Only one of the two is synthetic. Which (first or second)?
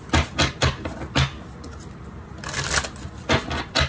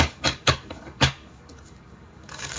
second